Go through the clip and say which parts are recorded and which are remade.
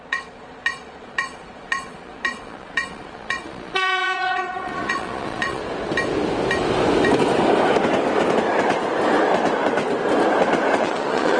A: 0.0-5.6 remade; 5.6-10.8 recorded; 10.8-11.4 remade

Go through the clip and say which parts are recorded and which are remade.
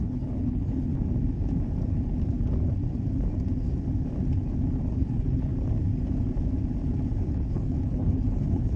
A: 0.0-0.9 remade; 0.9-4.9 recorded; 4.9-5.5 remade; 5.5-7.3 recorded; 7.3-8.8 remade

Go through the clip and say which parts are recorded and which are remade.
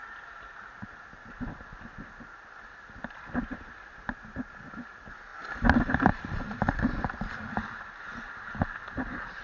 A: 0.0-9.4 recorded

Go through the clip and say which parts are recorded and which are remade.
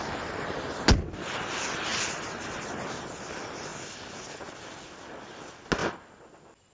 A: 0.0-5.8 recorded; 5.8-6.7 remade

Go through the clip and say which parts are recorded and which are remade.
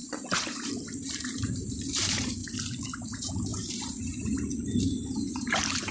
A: 0.0-2.4 remade; 2.4-3.0 recorded; 3.0-5.9 remade